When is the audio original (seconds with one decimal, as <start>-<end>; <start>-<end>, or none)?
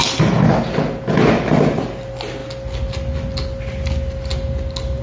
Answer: 0.0-5.0